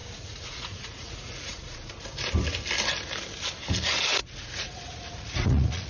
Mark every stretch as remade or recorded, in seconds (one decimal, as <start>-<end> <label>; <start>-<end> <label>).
0.0-1.9 remade; 1.9-4.2 recorded; 4.2-5.9 remade